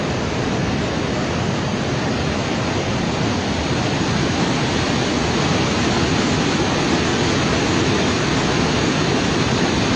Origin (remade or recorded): recorded